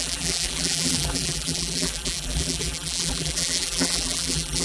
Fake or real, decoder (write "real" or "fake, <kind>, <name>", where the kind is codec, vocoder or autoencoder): fake, vocoder, BigVGAN v2